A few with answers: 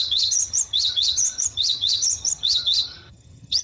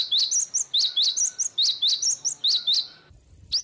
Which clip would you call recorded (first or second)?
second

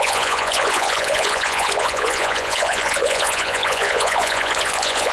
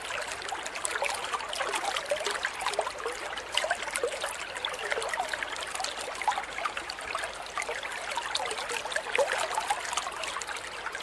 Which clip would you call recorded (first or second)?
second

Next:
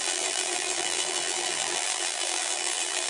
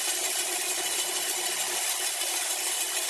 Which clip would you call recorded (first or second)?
second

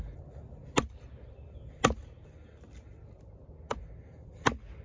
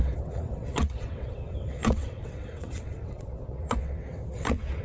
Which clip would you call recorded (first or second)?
first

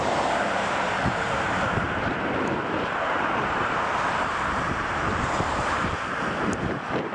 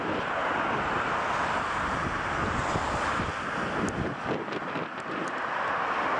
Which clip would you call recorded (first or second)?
second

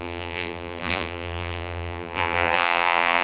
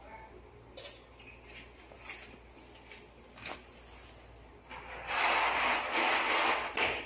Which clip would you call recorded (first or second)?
second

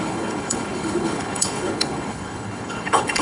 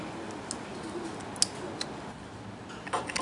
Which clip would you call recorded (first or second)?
second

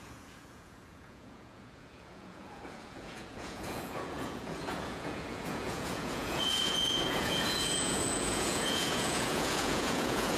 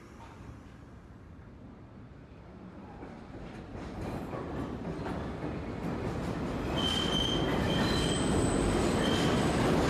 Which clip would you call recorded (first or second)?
second